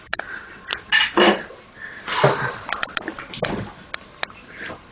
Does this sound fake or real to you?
real